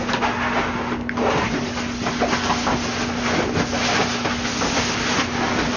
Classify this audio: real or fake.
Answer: real